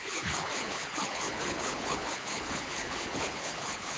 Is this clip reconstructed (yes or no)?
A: yes